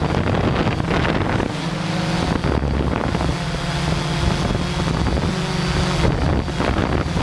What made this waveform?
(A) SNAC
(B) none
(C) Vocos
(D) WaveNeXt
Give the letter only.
B